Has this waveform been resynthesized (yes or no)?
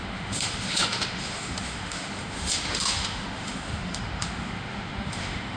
yes